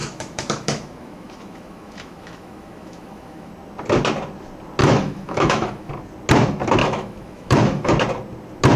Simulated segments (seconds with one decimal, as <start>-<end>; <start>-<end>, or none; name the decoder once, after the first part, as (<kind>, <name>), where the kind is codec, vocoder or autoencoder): 0.0-3.5 (autoencoder, DAC-VAE); 4.8-5.9; 6.8-7.9

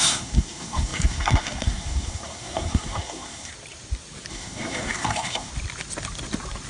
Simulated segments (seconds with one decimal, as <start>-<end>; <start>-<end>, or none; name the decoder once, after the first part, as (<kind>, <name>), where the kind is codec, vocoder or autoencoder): 0.0-3.5 (codec, SNAC); 4.3-5.5